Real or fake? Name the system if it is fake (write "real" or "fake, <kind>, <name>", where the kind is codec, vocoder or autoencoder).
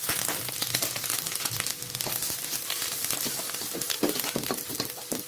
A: real